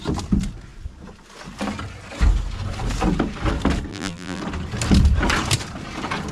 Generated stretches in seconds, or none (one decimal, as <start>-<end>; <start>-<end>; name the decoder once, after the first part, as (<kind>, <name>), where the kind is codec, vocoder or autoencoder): 3.9-4.4 (vocoder, BigVGAN v2)